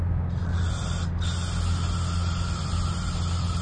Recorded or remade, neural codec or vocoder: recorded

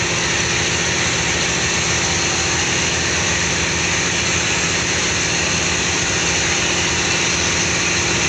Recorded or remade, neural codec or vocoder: recorded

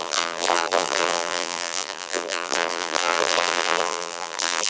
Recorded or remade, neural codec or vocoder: remade, vocoder, BigVGAN v2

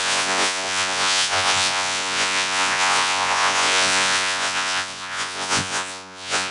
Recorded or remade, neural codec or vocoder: remade, vocoder, Vocos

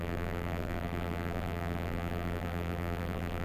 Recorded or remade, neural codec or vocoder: remade, vocoder, BigVGAN v2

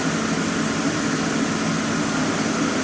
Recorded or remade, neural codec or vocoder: recorded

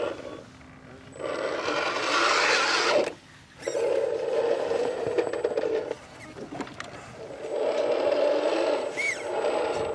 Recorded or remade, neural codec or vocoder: recorded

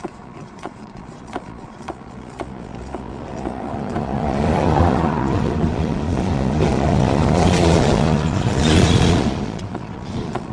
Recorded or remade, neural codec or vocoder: remade, vocoder, Vocos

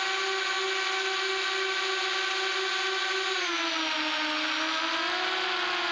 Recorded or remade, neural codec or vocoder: recorded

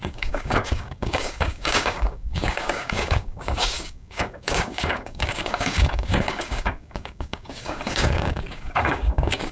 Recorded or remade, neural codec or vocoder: remade, codec, DAC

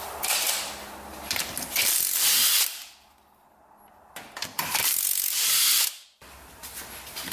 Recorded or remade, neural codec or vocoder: recorded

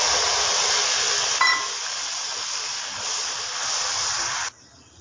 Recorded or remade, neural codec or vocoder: recorded